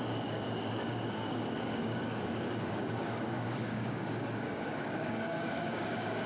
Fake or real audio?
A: fake